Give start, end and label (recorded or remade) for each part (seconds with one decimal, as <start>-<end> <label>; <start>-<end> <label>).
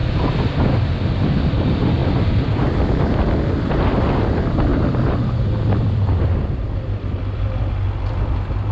0.0-0.6 remade; 0.6-2.0 recorded; 2.0-3.0 remade; 3.0-4.7 recorded; 4.7-6.3 remade; 6.3-8.7 recorded